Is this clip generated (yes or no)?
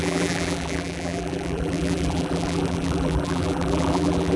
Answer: yes